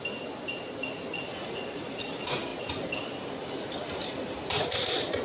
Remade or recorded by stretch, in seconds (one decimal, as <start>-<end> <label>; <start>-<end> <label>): 0.0-1.3 recorded; 1.3-2.0 remade; 2.0-5.2 recorded